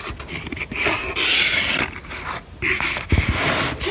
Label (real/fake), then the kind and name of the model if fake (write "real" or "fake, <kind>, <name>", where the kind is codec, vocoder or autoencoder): real